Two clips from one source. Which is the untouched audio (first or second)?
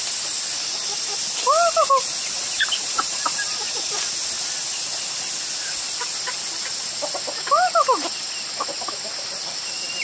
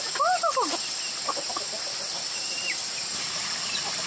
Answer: first